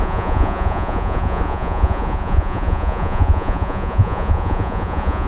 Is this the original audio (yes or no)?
no